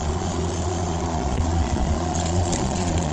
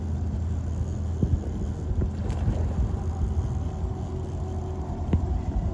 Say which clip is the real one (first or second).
second